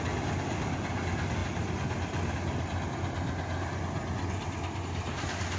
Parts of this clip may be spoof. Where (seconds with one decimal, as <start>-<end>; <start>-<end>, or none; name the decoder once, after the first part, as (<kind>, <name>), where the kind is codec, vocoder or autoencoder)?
none